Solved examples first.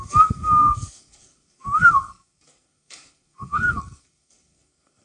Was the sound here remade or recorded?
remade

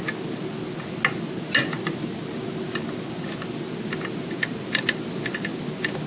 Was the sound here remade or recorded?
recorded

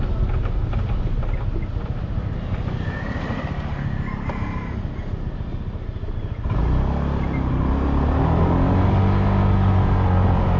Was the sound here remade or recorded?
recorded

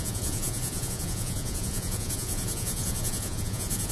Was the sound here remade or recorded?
remade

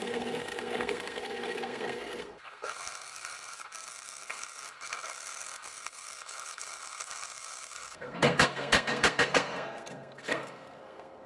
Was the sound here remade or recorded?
remade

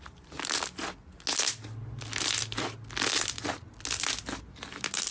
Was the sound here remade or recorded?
recorded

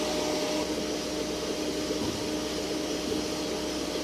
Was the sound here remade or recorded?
recorded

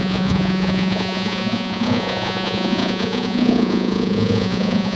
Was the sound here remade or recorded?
remade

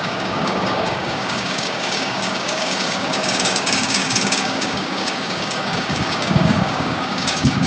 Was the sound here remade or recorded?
remade